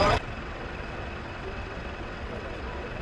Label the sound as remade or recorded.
remade